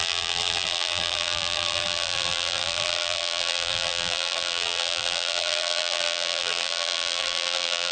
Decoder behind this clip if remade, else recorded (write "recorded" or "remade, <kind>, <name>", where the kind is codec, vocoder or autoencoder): remade, vocoder, BigVGAN v2